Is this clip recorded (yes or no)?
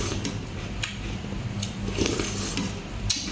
no